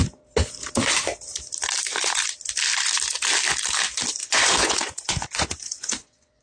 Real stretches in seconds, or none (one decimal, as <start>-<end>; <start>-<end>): 0.0-4.2